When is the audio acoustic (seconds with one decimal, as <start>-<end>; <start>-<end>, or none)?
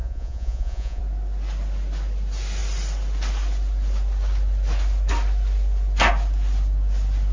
1.0-7.3